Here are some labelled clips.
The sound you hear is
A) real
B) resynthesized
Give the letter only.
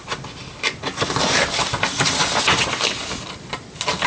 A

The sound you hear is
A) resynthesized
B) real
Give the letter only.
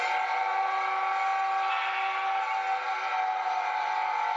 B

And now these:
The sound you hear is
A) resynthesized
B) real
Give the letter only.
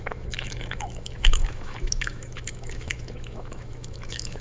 A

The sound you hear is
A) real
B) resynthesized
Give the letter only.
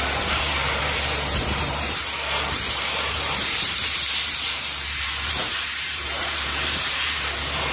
B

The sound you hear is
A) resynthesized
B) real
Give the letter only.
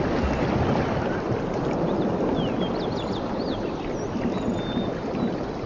B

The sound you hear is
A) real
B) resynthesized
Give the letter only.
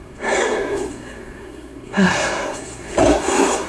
B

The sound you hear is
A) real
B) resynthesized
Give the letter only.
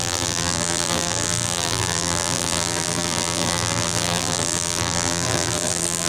B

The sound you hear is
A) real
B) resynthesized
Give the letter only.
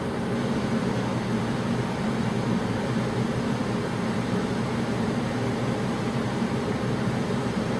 B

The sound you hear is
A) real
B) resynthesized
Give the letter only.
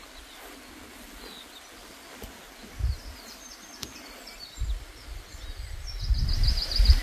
A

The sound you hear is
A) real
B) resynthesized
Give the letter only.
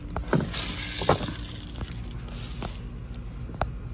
A